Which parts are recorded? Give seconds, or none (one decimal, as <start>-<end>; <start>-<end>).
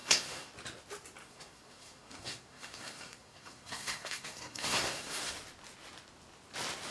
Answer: 0.5-1.2; 5.3-6.9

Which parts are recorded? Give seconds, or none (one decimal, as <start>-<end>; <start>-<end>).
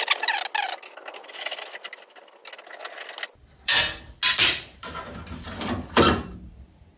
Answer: 0.0-7.0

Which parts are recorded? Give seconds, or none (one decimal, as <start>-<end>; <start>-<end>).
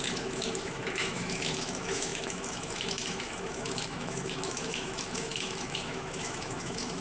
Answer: none